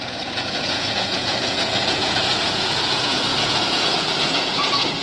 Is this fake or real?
fake